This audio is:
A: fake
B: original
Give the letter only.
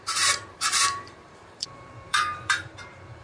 A